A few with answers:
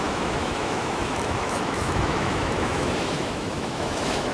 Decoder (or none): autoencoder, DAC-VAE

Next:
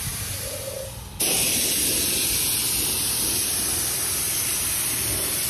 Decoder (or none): none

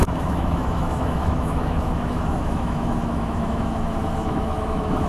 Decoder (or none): autoencoder, DAC-VAE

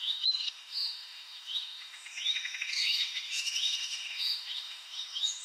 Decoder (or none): autoencoder, DAC-VAE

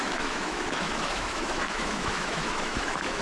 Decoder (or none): autoencoder, DAC-VAE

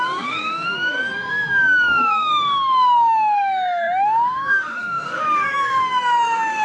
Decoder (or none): autoencoder, DAC-VAE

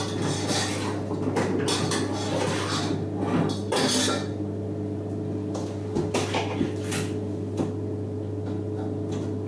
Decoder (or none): none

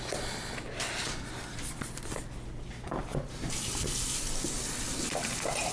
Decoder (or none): none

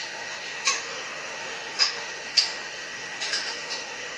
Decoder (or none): autoencoder, DAC-VAE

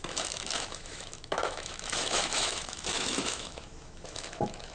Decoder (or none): autoencoder, DAC-VAE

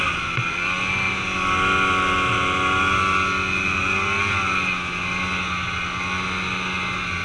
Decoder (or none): none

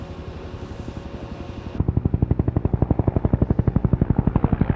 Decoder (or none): none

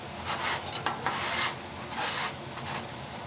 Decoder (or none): none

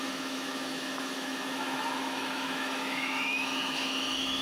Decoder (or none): autoencoder, DAC-VAE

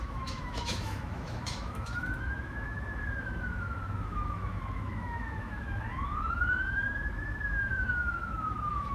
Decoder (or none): autoencoder, DAC-VAE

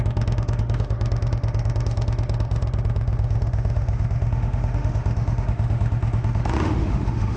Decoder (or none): autoencoder, DAC-VAE